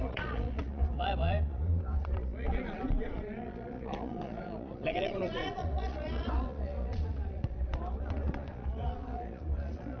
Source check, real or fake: fake